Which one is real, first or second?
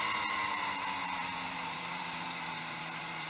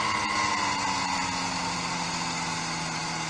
second